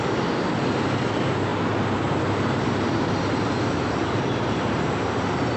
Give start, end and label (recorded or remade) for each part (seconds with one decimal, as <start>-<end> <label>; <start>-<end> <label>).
0.0-5.6 recorded